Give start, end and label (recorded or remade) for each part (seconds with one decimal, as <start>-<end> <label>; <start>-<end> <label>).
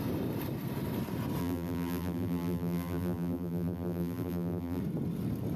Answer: 0.0-1.4 recorded; 1.4-4.8 remade; 4.8-5.6 recorded